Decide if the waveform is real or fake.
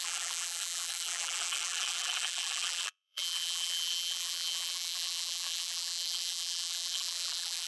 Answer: fake